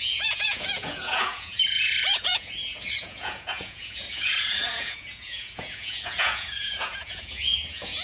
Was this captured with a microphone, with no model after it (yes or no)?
no